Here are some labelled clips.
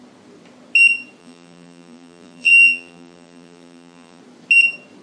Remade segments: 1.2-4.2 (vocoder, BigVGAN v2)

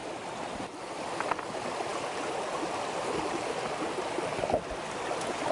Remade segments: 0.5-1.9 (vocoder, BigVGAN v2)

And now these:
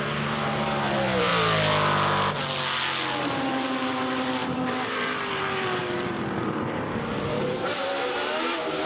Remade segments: 0.0-1.3 (vocoder, BigVGAN v2); 3.2-8.9